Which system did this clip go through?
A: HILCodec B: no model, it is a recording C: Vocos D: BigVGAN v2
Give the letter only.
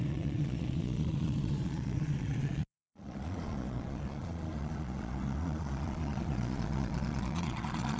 C